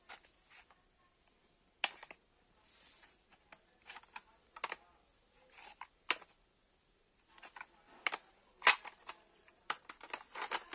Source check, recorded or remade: recorded